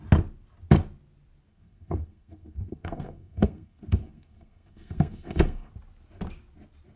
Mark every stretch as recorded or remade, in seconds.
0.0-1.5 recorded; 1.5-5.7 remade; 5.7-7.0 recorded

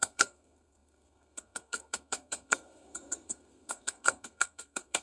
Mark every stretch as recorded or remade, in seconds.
0.0-5.0 remade

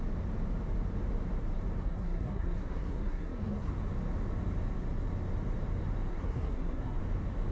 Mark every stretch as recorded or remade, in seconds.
0.0-1.8 recorded; 1.8-3.7 remade; 3.7-6.1 recorded; 6.1-7.0 remade; 7.0-7.5 recorded

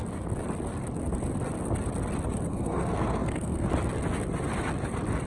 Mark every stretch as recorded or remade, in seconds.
0.0-2.5 recorded; 2.5-3.7 remade; 3.7-5.3 recorded